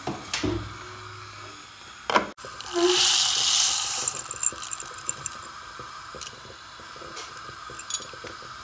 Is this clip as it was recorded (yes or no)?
yes